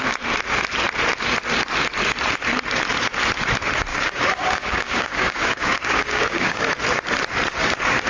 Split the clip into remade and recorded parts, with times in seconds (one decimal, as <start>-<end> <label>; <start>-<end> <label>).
0.0-3.9 recorded; 3.9-6.7 remade; 6.7-8.1 recorded